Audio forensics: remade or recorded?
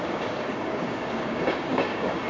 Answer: remade